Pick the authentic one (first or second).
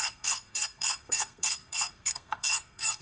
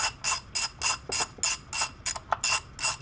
second